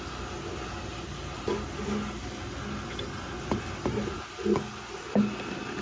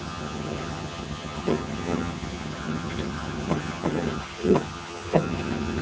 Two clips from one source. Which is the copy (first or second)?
second